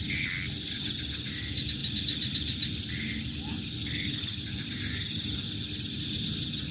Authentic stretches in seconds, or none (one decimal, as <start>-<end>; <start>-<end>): 0.0-6.7